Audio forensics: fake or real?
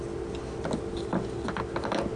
real